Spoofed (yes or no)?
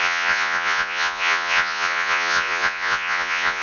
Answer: yes